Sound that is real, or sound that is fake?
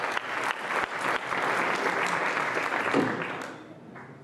real